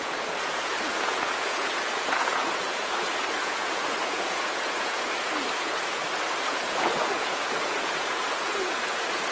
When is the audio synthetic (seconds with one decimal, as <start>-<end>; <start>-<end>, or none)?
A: 0.0-6.0; 6.5-9.3